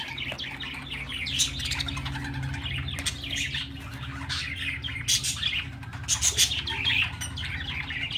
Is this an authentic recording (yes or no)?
yes